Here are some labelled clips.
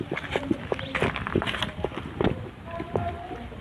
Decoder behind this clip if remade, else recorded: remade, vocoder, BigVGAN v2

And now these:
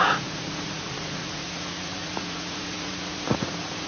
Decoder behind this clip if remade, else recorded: remade, vocoder, Vocos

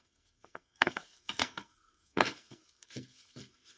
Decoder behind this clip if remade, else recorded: remade, codec, SNAC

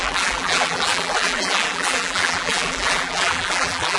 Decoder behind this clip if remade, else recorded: remade, vocoder, BigVGAN v2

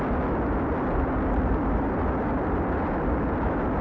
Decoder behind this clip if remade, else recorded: recorded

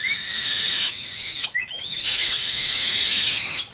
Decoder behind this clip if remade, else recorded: remade, autoencoder, DAC-VAE